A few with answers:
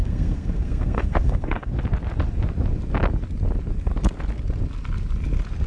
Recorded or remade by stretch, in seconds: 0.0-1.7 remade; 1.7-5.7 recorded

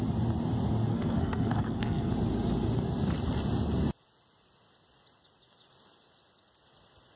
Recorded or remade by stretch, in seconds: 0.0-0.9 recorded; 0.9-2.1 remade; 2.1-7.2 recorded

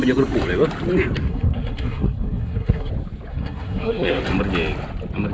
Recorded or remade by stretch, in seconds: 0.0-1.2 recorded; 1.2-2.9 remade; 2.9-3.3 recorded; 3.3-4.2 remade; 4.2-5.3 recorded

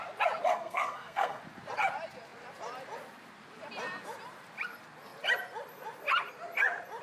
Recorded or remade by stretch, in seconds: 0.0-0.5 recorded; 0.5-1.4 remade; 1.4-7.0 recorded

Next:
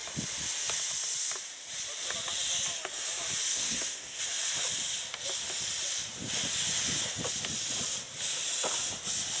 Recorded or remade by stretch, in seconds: 0.0-3.5 recorded; 3.5-4.2 remade; 4.2-9.4 recorded

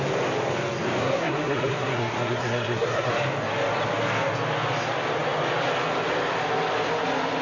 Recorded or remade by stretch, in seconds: 0.0-1.0 recorded; 1.0-3.1 remade; 3.1-7.4 recorded